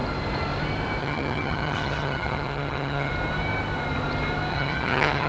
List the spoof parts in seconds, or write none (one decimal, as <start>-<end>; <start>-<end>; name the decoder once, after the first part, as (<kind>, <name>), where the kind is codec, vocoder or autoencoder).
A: 1.0-3.1 (vocoder, HiFi-GAN); 4.5-5.3